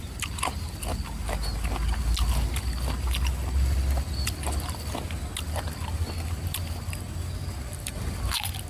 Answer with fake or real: real